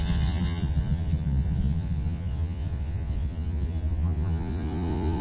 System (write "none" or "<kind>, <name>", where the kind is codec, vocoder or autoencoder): vocoder, Vocos